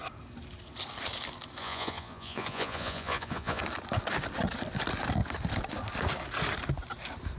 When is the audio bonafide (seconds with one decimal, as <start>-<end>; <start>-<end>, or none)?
0.0-1.6; 3.6-7.4